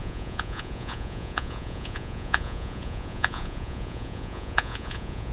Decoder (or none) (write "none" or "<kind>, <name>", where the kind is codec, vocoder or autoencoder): vocoder, Vocos